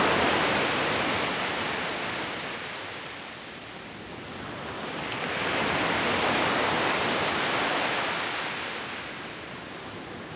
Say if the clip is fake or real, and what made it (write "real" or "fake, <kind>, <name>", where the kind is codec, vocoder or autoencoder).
real